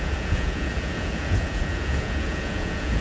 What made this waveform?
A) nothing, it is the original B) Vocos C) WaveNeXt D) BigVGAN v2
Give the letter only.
B